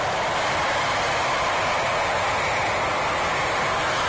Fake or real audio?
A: real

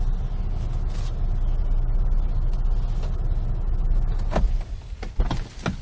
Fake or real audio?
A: real